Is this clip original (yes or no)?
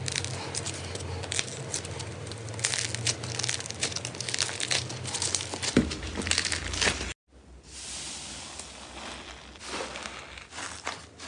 yes